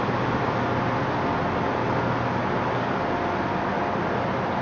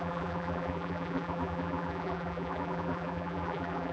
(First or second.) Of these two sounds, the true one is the first